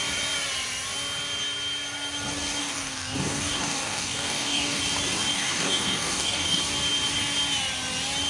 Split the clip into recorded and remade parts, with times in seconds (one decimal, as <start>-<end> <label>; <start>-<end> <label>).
0.0-2.6 recorded; 2.6-4.8 remade; 4.8-5.3 recorded; 5.3-6.6 remade; 6.6-8.3 recorded